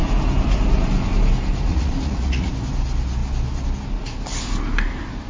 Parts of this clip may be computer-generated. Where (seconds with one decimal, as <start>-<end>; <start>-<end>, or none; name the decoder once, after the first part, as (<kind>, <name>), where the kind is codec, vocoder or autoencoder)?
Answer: 1.7-2.5 (vocoder, Vocos)